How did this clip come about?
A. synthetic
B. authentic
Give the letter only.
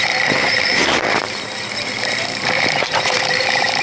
A